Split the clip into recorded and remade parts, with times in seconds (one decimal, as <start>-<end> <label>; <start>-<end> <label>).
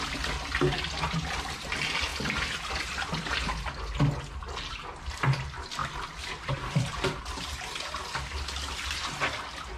0.0-9.8 recorded